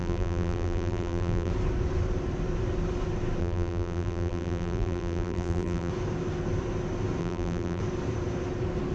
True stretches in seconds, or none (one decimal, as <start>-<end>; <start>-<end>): 1.5-3.4; 5.9-7.2; 7.8-8.9